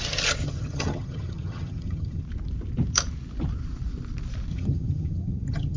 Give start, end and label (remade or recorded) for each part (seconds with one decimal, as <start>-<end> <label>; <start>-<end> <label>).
0.0-0.4 recorded; 0.4-2.2 remade; 2.2-4.5 recorded; 4.5-5.8 remade